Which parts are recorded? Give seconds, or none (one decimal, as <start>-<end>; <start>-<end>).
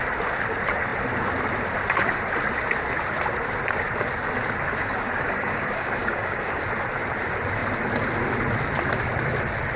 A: 0.0-4.8; 6.6-9.8